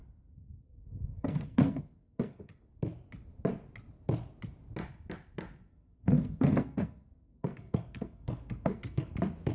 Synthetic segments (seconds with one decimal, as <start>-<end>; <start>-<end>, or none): 0.0-2.5; 5.7-9.1